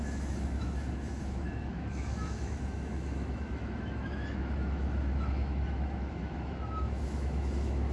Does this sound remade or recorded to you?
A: remade